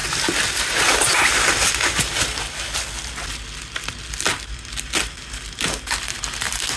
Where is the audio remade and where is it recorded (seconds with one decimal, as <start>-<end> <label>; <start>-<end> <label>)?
0.0-6.8 recorded